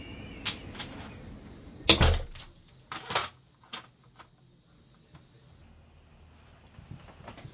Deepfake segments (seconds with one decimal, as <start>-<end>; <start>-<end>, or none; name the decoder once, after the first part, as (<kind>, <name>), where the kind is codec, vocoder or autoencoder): none